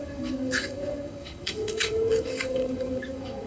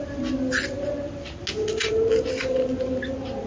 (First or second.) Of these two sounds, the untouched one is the second